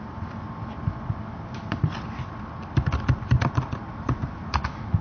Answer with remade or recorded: recorded